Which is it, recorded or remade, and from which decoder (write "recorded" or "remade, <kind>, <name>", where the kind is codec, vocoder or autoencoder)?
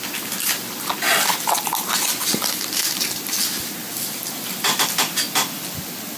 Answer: recorded